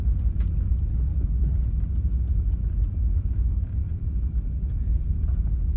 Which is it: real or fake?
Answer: real